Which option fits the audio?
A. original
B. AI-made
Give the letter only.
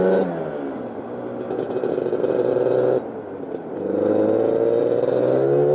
A